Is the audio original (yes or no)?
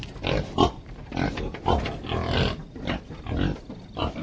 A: yes